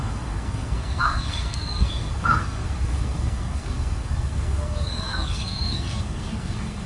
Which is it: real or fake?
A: fake